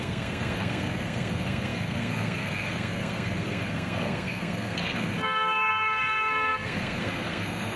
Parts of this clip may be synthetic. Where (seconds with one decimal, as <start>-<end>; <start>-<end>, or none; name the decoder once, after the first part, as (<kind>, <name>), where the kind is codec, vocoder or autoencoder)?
0.0-7.8 (codec, SNAC)